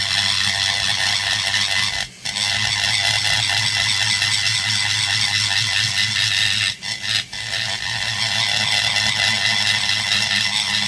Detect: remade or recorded recorded